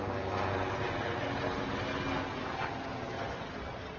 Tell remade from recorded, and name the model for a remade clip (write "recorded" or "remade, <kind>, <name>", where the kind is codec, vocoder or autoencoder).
recorded